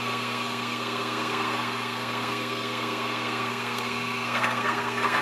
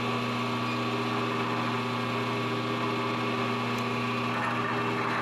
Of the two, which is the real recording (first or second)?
second